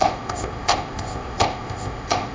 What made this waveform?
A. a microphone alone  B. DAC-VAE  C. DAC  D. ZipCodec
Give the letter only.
D